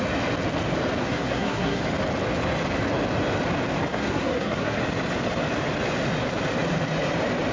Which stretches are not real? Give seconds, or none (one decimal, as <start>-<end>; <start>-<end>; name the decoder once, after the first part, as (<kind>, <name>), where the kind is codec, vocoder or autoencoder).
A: 1.0-1.8 (codec, SNAC); 3.9-4.8